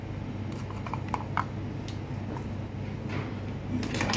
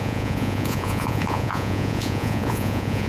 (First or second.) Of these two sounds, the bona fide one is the first